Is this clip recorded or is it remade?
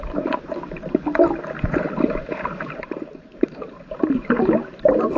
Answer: remade